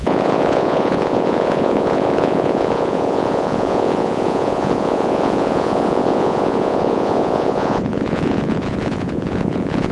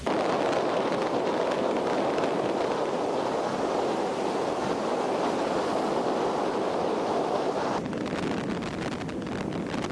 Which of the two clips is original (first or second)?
second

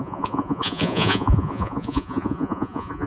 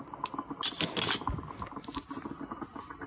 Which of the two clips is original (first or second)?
second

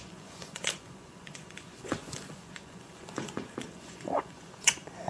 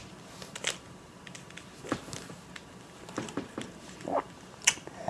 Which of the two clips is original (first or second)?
second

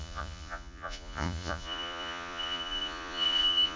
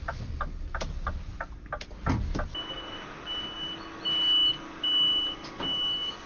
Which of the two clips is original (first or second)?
second